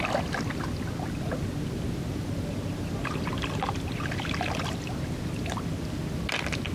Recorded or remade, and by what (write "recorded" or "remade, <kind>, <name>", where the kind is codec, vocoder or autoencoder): recorded